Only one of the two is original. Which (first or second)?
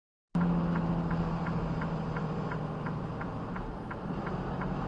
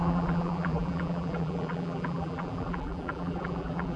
first